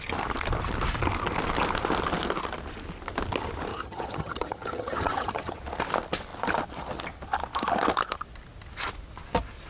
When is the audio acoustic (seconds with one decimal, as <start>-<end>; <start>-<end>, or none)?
0.0-3.7; 5.6-9.7